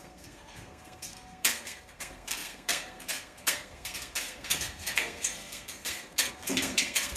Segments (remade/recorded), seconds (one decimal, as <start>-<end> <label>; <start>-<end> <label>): 0.0-7.2 remade